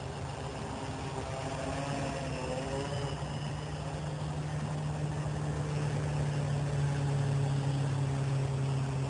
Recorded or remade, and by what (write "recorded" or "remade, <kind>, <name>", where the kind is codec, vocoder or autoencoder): recorded